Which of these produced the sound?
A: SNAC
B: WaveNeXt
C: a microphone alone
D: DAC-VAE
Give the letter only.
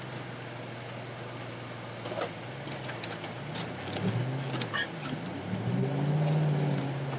C